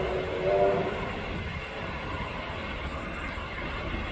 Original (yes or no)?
yes